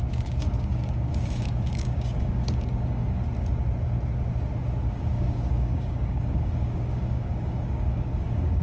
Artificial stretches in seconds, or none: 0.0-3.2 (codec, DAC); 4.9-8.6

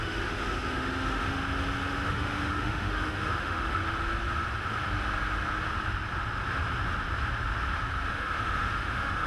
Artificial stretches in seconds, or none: 0.0-1.4 (autoencoder, DAC-VAE); 2.1-3.8; 8.1-9.3

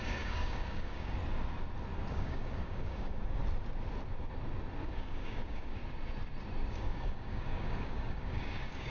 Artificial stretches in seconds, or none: 0.0-1.2 (codec, DAC); 2.1-3.4; 4.8-5.8; 6.7-8.9